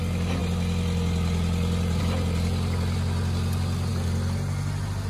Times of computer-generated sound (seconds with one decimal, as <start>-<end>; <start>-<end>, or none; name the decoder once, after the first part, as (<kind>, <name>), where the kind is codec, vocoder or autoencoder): none

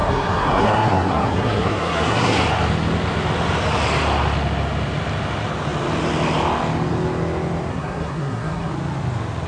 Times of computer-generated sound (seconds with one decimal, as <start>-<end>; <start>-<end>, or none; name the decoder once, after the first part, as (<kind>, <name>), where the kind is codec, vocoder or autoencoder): 0.0-2.4 (codec, SNAC); 7.7-8.7

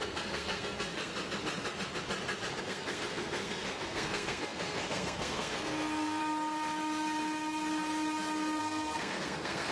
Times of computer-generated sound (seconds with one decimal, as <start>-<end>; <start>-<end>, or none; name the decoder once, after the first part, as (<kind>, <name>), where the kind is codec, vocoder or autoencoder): 0.0-1.1 (codec, SNAC); 2.6-6.2; 8.6-9.7

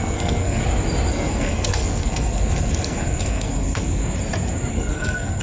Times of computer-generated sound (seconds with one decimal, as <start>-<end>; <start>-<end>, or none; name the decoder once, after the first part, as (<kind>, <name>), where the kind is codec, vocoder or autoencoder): 0.0-0.6 (codec, SNAC); 1.1-4.0; 4.7-5.4